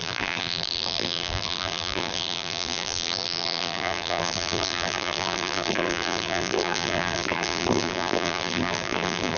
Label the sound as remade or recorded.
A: remade